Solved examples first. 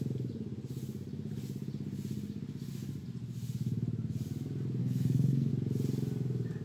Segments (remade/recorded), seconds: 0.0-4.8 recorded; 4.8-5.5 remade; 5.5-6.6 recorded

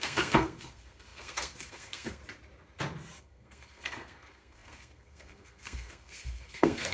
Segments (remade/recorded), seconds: 0.0-2.2 remade; 2.2-3.2 recorded; 3.2-6.9 remade

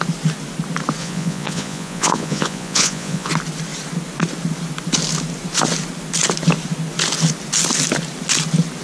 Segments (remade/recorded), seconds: 0.0-1.0 recorded; 1.0-3.3 remade; 3.3-8.8 recorded

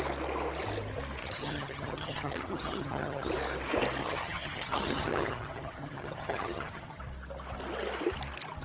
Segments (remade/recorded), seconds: 0.0-1.2 recorded; 1.2-3.3 remade; 3.3-4.0 recorded; 4.0-7.0 remade; 7.0-8.6 recorded

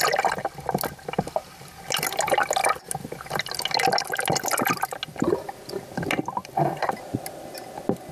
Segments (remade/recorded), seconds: 0.0-8.1 recorded

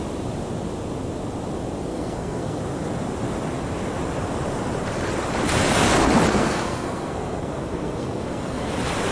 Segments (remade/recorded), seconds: 0.0-1.9 recorded; 1.9-2.6 remade; 2.6-6.3 recorded; 6.3-8.7 remade; 8.7-9.1 recorded

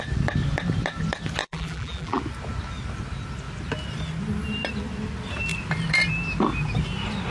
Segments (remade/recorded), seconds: 0.0-1.4 recorded; 1.4-2.2 remade; 2.2-7.3 recorded

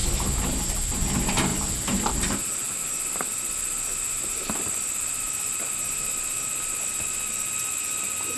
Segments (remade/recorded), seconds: 0.0-1.5 recorded; 1.5-2.8 remade; 2.8-8.4 recorded